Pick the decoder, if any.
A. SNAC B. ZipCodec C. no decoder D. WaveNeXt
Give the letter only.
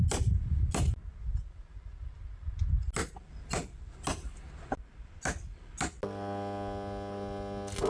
C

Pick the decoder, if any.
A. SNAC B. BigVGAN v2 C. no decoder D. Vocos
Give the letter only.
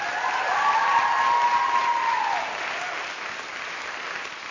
C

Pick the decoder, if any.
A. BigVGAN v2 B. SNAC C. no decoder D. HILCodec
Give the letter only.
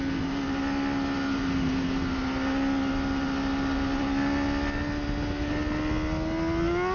C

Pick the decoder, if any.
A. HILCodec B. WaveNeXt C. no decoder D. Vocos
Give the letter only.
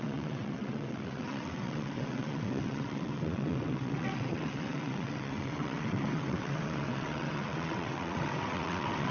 B